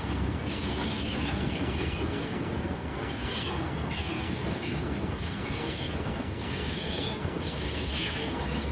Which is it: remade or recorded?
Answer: remade